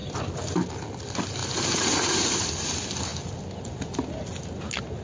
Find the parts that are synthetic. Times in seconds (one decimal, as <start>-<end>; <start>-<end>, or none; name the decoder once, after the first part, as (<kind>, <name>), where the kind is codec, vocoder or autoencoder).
0.0-0.7 (vocoder, BigVGAN v2); 1.4-2.5